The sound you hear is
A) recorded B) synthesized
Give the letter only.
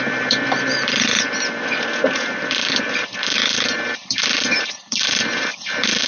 B